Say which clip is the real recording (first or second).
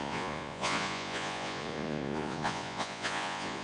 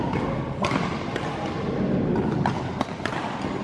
second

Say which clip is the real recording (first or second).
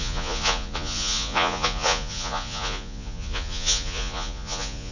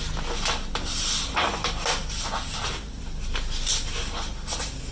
second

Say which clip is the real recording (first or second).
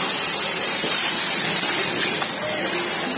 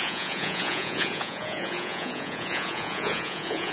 first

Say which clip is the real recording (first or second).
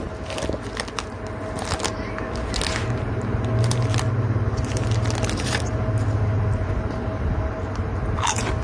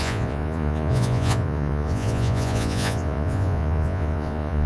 first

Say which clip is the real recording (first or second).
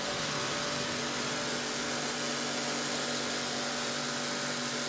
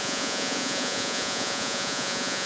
first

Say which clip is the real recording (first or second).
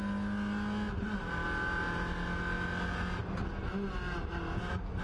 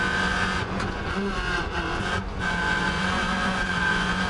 first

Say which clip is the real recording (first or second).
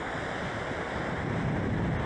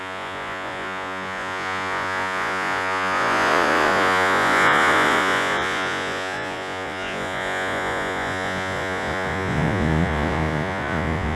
first